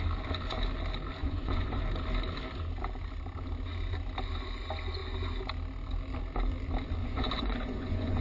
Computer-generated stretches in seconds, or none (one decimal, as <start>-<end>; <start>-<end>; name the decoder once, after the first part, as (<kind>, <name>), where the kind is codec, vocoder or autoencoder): 1.2-1.8 (vocoder, Vocos); 7.0-8.2